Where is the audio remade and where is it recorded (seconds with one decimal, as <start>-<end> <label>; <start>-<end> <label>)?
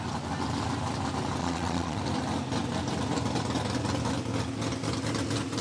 0.0-1.4 recorded; 1.4-2.0 remade; 2.0-5.6 recorded